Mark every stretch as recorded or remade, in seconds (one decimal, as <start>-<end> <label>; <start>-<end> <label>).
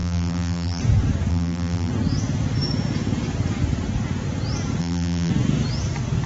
0.0-0.8 remade; 0.8-1.3 recorded; 1.3-1.9 remade; 1.9-4.8 recorded; 4.8-5.3 remade; 5.3-6.3 recorded